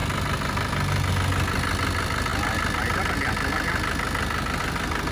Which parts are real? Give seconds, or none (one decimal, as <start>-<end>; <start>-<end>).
0.0-5.1